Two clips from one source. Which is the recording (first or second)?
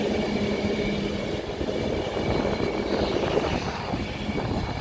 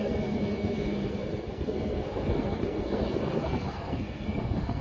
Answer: first